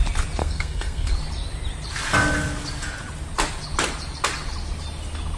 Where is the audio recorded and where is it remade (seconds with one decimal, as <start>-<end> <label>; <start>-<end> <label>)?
0.0-0.4 recorded; 0.4-1.1 remade; 1.1-5.4 recorded